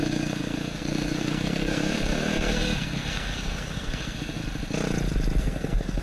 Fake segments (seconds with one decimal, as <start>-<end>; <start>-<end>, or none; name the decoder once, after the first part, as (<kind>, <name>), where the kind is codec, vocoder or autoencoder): 0.0-4.4 (codec, SNAC); 5.4-6.0